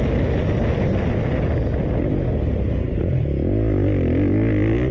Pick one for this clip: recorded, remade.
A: recorded